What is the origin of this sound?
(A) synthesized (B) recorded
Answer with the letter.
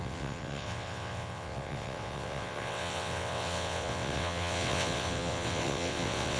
A